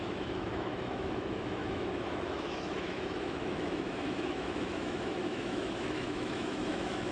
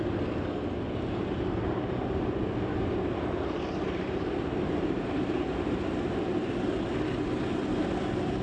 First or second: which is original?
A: second